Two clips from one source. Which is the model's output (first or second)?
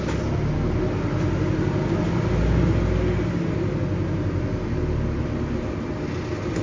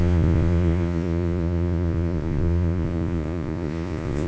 second